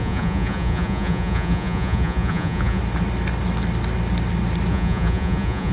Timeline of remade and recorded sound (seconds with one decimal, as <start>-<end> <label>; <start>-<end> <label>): 0.0-2.8 remade; 2.8-4.7 recorded; 4.7-5.7 remade